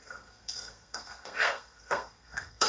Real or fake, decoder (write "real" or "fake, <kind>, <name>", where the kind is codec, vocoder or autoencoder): fake, codec, SNAC